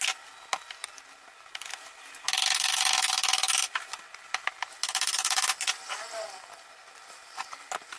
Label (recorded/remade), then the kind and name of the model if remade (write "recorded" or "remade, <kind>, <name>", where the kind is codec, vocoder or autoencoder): recorded